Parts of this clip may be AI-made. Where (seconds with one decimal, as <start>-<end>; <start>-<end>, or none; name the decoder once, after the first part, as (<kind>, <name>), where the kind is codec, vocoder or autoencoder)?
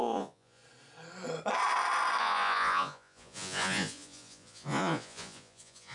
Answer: 0.0-0.6 (vocoder, Vocos); 2.2-5.9